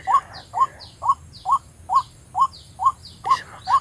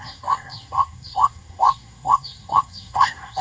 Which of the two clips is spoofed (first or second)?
second